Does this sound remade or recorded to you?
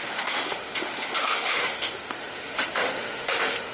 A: remade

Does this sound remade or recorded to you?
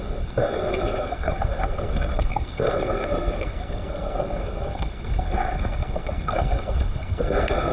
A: remade